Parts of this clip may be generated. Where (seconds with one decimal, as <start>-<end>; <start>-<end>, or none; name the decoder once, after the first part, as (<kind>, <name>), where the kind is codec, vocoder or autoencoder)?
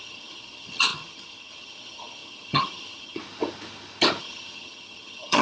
0.0-3.2 (vocoder, HiFi-GAN); 4.2-5.4